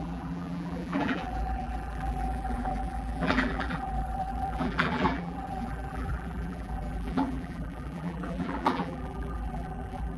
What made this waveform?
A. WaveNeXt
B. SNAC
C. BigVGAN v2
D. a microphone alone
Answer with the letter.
C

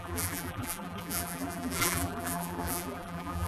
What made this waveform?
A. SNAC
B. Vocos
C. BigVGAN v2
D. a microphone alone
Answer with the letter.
C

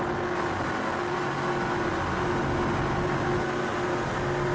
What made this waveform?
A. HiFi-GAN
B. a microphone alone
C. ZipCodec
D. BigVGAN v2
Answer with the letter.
B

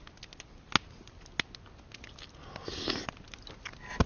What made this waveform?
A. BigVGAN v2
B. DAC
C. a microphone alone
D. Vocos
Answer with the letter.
C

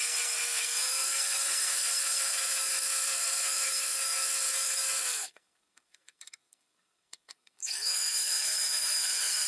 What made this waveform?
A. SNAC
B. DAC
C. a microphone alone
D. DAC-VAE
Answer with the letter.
A